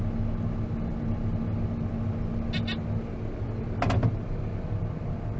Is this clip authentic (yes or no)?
yes